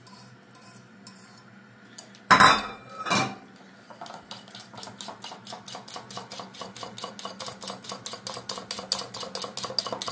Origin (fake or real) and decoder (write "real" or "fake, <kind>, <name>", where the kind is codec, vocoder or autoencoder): real